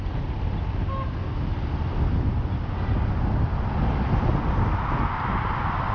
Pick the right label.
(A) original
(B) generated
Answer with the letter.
A